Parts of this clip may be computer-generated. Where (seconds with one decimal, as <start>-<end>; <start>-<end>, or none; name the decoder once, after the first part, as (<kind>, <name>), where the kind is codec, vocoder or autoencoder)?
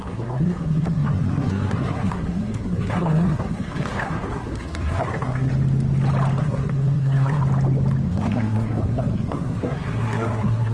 0.0-5.5 (codec, SNAC); 6.4-7.4; 8.1-10.7